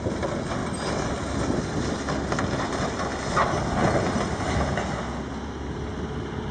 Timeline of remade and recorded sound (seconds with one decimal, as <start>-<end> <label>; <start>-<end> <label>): 0.0-6.5 recorded